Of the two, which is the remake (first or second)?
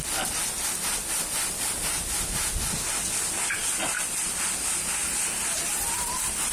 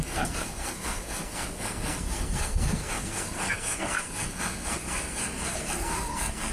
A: second